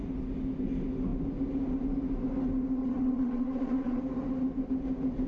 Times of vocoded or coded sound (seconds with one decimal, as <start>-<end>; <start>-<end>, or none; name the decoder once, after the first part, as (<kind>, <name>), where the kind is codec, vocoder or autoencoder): 2.8-4.0 (vocoder, WaveNeXt)